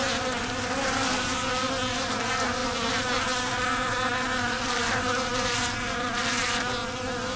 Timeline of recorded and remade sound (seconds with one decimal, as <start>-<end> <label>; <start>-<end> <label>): 0.0-7.4 recorded